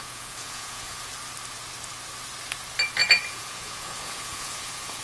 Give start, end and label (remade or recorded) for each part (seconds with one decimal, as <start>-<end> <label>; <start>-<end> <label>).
0.0-1.1 remade; 1.1-3.3 recorded; 3.3-5.0 remade